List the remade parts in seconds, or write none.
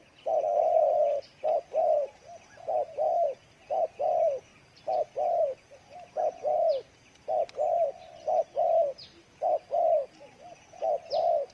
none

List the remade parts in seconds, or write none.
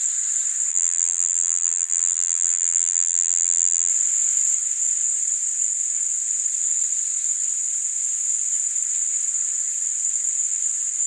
0.7-3.9